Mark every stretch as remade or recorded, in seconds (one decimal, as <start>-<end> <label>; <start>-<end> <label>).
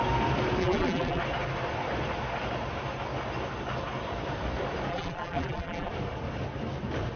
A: 0.0-0.6 recorded; 0.6-1.2 remade; 1.2-4.9 recorded; 4.9-5.9 remade; 5.9-7.2 recorded